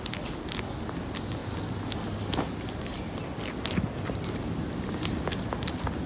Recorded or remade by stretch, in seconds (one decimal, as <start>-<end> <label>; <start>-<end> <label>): 0.0-6.1 recorded